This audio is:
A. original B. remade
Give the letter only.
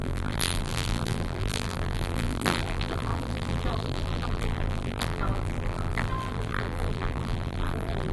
B